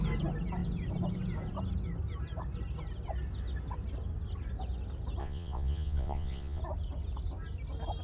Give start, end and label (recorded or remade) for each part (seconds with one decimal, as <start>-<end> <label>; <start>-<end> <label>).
0.0-5.2 recorded; 5.2-6.6 remade; 6.6-8.0 recorded